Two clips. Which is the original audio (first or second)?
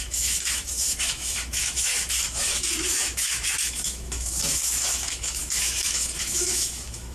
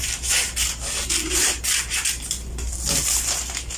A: second